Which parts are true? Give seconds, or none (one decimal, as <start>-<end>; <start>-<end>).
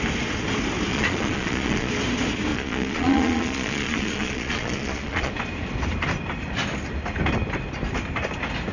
0.0-0.9; 1.9-2.5; 5.3-8.7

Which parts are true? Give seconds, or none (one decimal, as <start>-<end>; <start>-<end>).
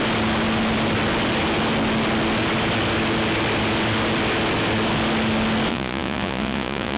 0.0-5.7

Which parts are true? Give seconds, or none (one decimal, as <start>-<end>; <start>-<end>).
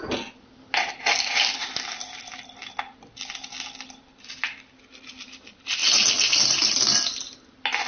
0.0-7.9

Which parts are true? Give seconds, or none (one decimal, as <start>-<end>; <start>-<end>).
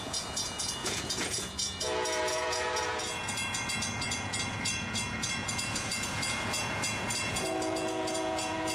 none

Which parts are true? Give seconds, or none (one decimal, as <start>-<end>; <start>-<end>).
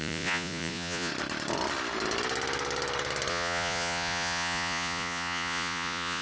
1.1-3.3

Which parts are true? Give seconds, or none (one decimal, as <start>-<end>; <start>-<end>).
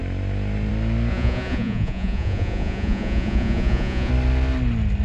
0.0-1.1; 4.1-5.0